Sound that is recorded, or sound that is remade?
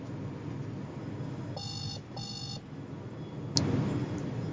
recorded